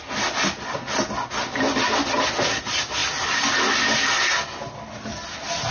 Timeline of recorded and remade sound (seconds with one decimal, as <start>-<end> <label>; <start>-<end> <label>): 0.0-5.7 recorded